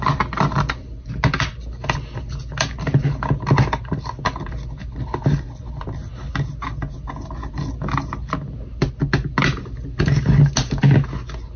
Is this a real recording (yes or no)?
yes